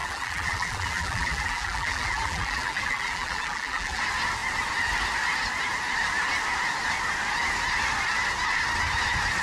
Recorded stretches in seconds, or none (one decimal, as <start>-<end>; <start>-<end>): 4.0-9.4